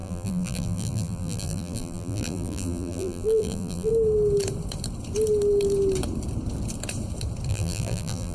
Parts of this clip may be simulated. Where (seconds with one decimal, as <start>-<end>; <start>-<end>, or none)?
0.0-3.9; 7.5-8.3